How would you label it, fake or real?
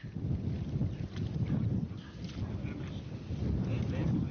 real